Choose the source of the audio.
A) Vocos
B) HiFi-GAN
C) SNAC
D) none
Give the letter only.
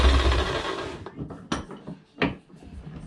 D